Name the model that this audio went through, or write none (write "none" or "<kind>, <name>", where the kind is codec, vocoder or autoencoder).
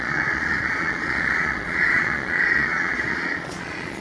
vocoder, Vocos